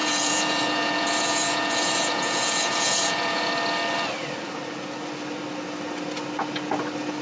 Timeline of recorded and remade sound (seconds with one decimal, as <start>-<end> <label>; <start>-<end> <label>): 0.0-3.5 remade; 3.5-7.2 recorded